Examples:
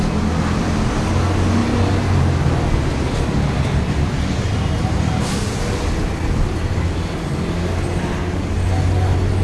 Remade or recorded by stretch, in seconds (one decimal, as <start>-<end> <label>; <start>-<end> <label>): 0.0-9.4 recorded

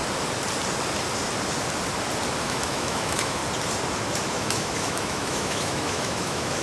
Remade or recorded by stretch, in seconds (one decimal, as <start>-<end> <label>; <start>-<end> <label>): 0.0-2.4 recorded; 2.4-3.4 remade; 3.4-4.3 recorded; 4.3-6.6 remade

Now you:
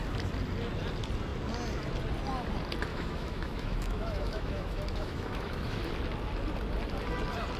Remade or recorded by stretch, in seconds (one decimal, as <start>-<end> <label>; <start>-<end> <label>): 0.0-2.9 recorded; 2.9-5.9 remade; 5.9-7.6 recorded

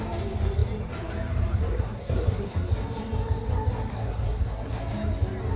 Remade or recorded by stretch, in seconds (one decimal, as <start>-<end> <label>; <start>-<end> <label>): 0.0-1.6 recorded; 1.6-2.7 remade; 2.7-3.9 recorded; 3.9-4.8 remade; 4.8-5.6 recorded

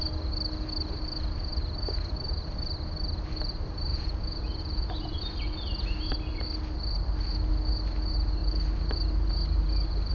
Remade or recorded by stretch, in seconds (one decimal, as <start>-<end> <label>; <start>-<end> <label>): 0.0-3.9 recorded; 3.9-5.2 remade; 5.2-10.1 recorded

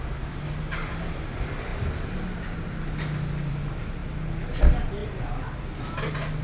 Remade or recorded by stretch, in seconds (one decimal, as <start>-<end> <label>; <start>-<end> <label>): 0.0-6.4 recorded

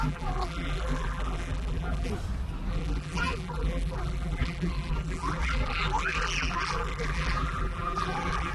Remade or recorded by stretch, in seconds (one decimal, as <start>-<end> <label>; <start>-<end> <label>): 0.0-2.1 remade; 2.1-2.7 recorded; 2.7-8.5 remade

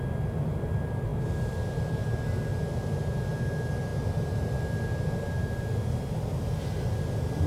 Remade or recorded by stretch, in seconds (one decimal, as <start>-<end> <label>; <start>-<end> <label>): 0.0-7.5 recorded